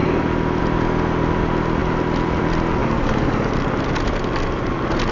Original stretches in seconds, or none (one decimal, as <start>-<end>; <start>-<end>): 0.0-2.8; 3.5-5.1

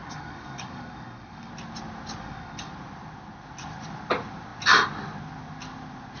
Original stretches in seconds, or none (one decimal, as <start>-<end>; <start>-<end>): 1.5-2.2; 2.7-6.2

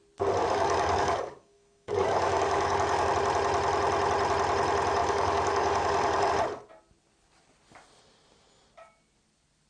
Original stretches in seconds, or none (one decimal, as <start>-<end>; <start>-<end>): 0.0-0.4; 3.1-5.0; 6.3-9.7

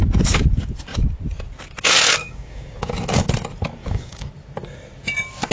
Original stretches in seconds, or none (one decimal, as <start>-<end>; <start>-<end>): 0.0-2.2; 3.3-3.8; 4.3-5.5

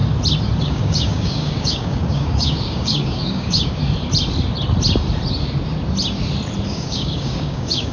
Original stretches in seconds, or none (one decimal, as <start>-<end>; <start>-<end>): 0.0-0.6; 3.8-6.7

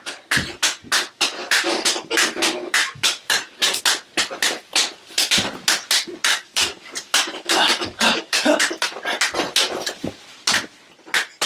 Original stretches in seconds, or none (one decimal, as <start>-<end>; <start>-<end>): 0.0-1.4; 3.8-6.3; 8.8-11.5

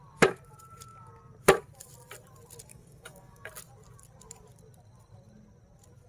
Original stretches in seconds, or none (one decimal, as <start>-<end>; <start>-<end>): 0.0-2.7; 3.5-6.1